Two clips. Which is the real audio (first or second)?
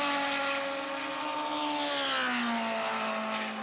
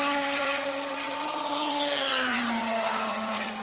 first